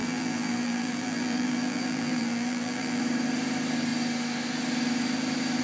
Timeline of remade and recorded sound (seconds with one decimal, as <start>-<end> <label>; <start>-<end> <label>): 0.0-3.0 remade; 3.0-5.6 recorded